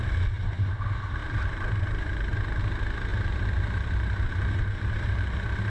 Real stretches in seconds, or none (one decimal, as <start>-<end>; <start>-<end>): 0.0-1.2; 2.6-3.1; 4.9-5.7